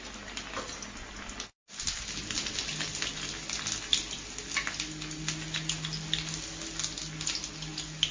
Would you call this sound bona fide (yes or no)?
yes